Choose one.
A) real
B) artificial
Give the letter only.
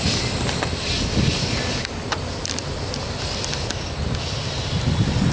A